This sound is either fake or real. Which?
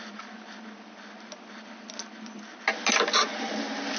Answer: real